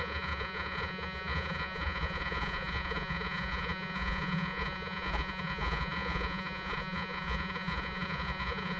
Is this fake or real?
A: fake